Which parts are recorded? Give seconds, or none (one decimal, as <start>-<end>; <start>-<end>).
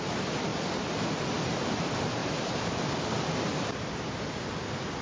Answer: 0.0-2.2; 3.9-5.0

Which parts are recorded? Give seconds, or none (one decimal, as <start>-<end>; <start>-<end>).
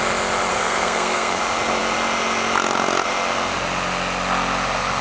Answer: 0.0-0.5; 1.4-5.0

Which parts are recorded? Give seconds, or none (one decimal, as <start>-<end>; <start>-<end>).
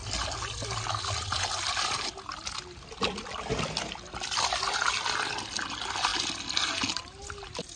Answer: 0.0-7.8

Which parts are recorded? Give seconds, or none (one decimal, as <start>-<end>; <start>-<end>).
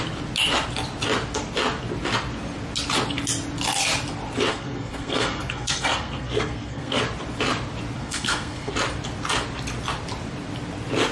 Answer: 0.0-4.5; 7.0-8.0; 8.7-11.1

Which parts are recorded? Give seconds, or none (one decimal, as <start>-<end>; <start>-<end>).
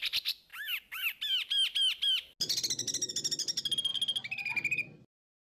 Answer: 0.0-5.6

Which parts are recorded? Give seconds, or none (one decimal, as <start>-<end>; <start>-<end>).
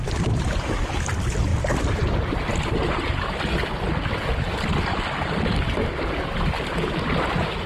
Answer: 0.0-7.7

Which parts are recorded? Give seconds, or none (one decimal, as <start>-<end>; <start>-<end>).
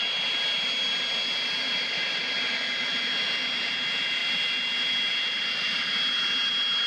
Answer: 0.0-6.9